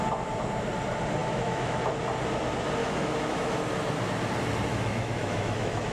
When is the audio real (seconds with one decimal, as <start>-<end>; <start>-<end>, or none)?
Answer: 0.0-1.2; 1.8-2.8; 3.5-4.7

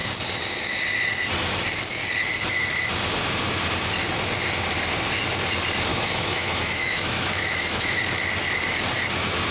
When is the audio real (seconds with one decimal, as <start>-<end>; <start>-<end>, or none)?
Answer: 0.0-5.9; 8.0-9.5

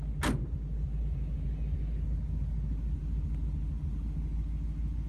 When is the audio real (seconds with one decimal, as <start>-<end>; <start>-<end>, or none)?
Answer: 0.0-5.1

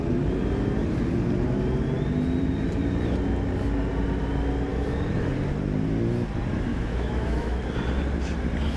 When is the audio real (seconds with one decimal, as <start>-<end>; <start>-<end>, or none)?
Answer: 0.0-4.7; 5.3-6.7; 7.6-8.8

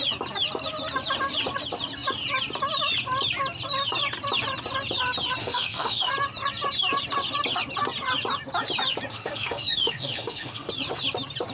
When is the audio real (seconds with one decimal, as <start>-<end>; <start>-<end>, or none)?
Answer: 0.0-5.4; 6.1-9.1; 10.7-11.5

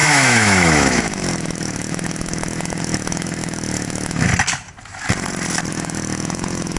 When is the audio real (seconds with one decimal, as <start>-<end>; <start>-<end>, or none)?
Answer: 4.3-5.7

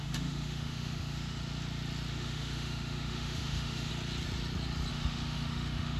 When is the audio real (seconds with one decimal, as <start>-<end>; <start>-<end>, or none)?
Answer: 1.4-2.1; 3.9-4.9

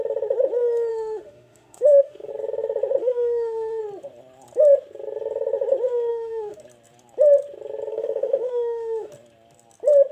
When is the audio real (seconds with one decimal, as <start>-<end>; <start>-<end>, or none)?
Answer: 0.0-0.9; 2.3-3.0; 3.8-6.1; 6.6-7.9; 9.1-10.1